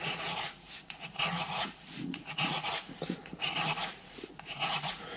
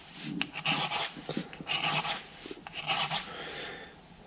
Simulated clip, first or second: first